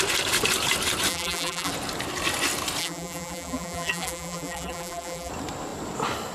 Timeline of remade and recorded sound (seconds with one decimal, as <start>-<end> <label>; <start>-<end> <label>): 0.0-1.1 recorded; 1.1-1.7 remade; 1.7-2.8 recorded; 2.8-5.3 remade; 5.3-6.3 recorded